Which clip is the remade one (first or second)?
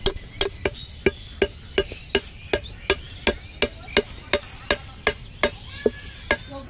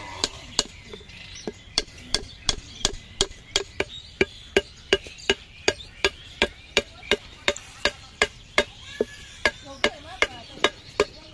second